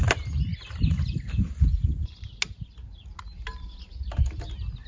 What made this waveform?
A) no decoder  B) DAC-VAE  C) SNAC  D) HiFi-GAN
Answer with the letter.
A